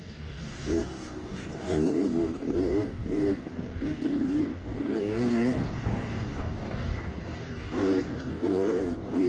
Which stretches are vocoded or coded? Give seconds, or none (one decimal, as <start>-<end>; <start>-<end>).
0.0-9.3